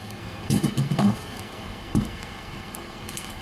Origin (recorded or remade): remade